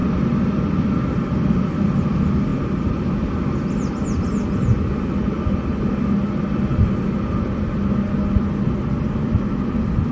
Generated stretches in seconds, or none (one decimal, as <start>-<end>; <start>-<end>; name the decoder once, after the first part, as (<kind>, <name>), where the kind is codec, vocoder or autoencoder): none